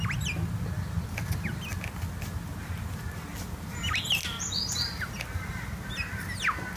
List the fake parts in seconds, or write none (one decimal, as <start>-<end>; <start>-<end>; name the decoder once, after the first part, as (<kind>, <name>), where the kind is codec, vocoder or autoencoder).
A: none